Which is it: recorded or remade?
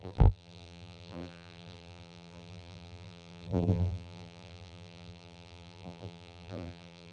remade